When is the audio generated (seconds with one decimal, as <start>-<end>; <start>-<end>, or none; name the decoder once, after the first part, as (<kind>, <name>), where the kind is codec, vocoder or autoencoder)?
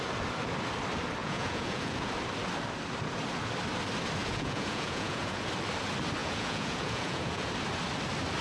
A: 1.2-2.1 (vocoder, Vocos); 4.2-5.5; 6.2-7.5